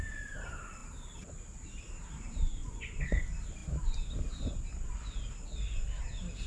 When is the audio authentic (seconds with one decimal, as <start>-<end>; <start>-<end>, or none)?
0.0-2.6; 3.2-6.5